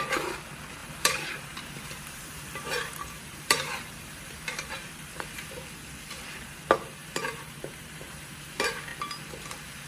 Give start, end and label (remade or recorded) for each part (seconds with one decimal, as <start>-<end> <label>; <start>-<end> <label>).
0.0-0.8 recorded; 0.8-5.5 remade; 5.5-7.0 recorded; 7.0-8.3 remade; 8.3-9.9 recorded